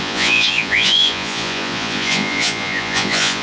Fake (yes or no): yes